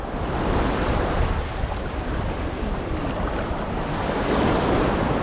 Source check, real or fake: real